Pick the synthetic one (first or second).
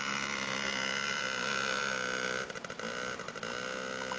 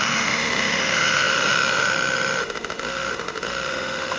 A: second